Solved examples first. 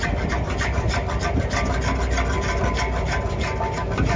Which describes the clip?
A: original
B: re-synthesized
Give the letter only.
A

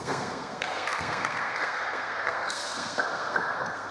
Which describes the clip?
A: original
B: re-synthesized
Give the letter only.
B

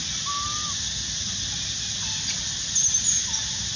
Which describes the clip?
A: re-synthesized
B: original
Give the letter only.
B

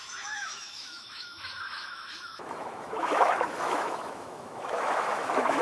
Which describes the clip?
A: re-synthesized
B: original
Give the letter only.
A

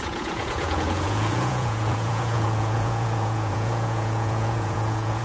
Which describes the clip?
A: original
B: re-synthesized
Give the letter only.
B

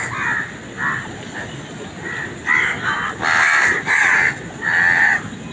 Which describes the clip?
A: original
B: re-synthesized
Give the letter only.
A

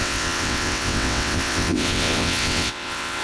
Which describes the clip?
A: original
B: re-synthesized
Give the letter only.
B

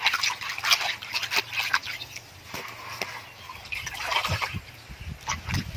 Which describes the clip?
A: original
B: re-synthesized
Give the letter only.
A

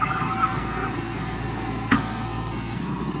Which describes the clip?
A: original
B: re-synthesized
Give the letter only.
B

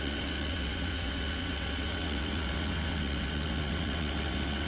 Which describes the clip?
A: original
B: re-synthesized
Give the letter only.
B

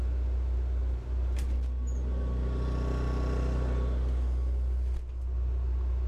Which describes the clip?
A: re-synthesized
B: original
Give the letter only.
B